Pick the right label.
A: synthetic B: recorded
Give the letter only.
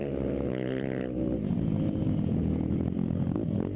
B